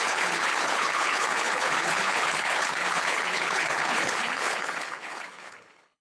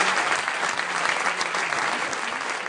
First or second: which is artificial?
first